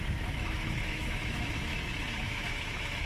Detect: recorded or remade remade